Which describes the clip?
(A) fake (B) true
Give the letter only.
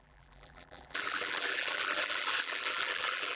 A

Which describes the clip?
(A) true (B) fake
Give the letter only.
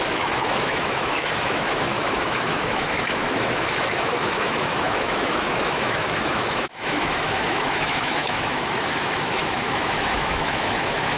B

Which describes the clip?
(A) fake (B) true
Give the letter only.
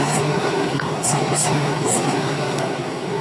A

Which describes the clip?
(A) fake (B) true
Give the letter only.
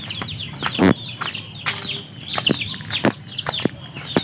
B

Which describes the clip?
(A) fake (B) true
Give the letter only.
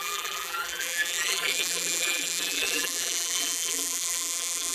A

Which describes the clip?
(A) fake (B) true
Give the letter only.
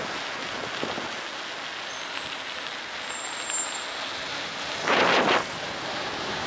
B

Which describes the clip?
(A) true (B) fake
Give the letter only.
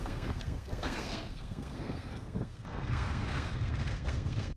B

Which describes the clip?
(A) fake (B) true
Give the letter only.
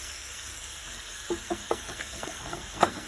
A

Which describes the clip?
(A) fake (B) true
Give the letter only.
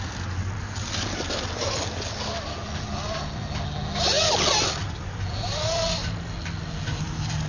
B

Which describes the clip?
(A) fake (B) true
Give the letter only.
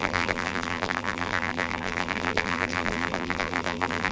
A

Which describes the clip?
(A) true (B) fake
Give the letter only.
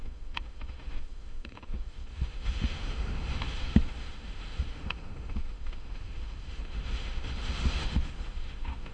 B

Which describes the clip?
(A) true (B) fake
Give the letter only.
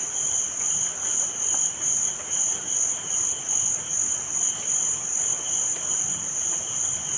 A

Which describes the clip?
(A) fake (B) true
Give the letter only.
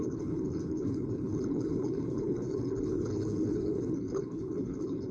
A